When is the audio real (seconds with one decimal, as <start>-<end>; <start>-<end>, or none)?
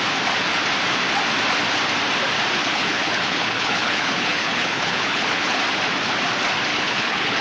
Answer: 0.0-2.6; 5.6-6.7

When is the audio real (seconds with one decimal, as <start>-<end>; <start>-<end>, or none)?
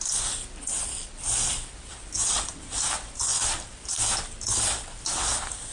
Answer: 0.0-5.7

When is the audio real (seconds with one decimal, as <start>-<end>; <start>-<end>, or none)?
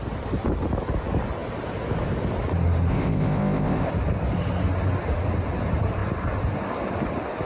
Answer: 0.0-2.9; 3.9-7.4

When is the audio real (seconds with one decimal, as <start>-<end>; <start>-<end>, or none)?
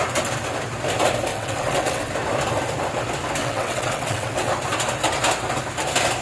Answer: 0.0-1.3; 2.1-3.4; 4.5-6.2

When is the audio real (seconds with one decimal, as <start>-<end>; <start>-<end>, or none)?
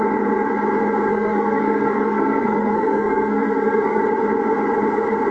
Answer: 0.0-1.1; 4.0-5.3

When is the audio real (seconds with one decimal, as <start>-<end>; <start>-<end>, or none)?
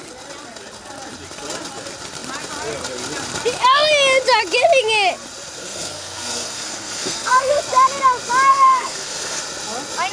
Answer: 0.0-5.6; 7.6-8.5; 9.4-10.1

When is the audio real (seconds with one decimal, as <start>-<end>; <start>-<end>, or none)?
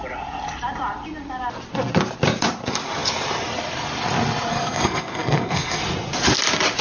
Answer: 0.0-4.5; 5.8-6.8